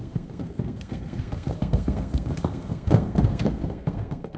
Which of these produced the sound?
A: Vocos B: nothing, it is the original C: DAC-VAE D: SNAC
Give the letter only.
D